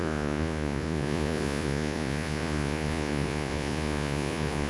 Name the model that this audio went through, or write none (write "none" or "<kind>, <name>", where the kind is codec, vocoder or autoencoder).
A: vocoder, Vocos